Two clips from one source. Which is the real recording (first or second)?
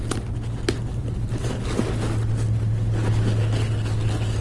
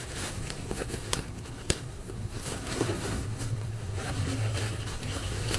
first